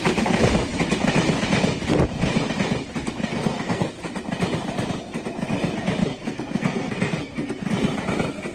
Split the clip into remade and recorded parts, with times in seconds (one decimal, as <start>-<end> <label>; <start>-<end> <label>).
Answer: 0.0-3.3 recorded; 3.3-3.9 remade; 3.9-6.0 recorded; 6.0-7.7 remade; 7.7-8.5 recorded